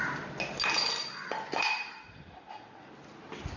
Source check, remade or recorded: recorded